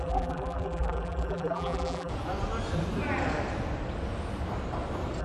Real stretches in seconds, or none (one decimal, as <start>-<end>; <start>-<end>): 2.1-5.2